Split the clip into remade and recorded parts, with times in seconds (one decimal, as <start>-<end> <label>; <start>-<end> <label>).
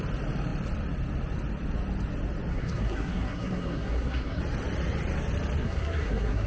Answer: 0.0-2.5 recorded; 2.5-4.4 remade; 4.4-5.6 recorded; 5.6-6.5 remade